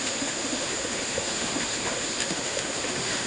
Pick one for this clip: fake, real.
fake